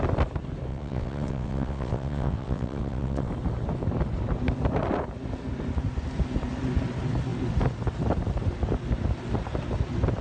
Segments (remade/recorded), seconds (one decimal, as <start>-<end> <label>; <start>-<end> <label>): 0.0-0.7 recorded; 0.7-3.3 remade; 3.3-10.2 recorded